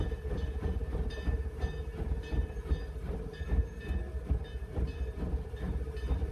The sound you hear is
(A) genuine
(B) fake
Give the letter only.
A